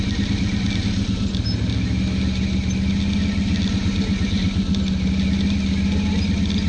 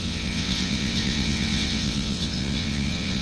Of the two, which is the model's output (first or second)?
second